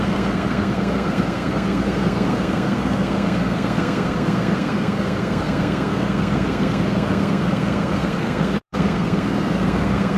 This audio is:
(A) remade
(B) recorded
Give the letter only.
A